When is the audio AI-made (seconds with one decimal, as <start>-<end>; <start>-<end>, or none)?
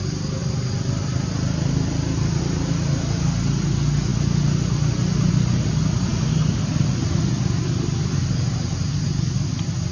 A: none